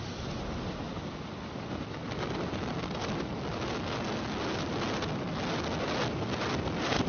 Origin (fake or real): real